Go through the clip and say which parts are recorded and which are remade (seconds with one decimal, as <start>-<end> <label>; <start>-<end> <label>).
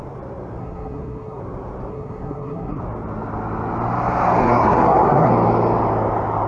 0.0-0.6 recorded; 0.6-1.4 remade; 1.4-1.9 recorded; 1.9-2.8 remade; 2.8-4.4 recorded; 4.4-5.3 remade; 5.3-6.5 recorded